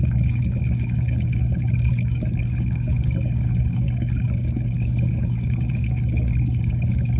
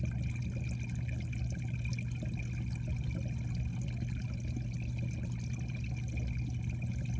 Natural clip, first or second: second